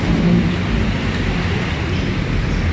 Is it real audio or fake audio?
real